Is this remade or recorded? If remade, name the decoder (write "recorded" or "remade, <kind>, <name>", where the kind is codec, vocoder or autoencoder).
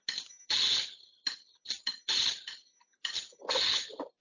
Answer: recorded